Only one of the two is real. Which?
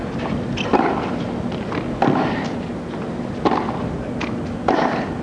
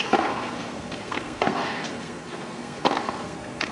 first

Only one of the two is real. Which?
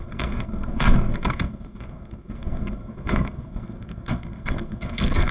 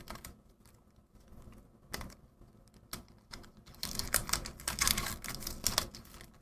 second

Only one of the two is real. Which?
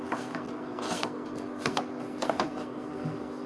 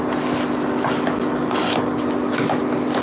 second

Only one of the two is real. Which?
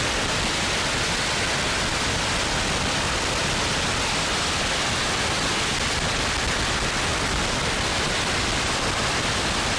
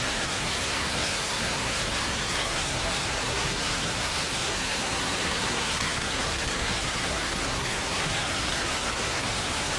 first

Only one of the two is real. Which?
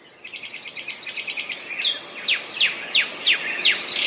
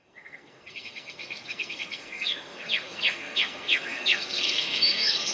first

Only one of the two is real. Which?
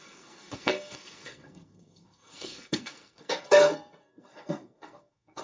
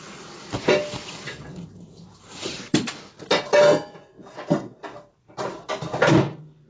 second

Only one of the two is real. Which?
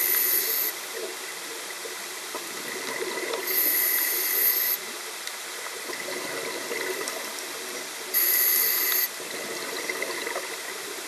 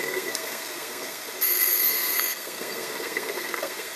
first